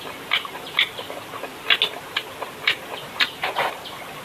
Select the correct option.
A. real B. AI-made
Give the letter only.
A